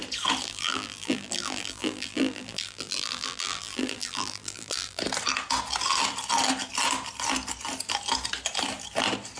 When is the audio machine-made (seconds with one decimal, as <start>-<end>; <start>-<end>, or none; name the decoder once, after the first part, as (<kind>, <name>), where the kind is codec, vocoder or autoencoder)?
0.4-5.0 (vocoder, BigVGAN v2)